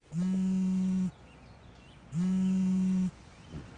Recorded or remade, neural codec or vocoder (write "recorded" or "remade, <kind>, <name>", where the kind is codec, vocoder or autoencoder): remade, vocoder, Vocos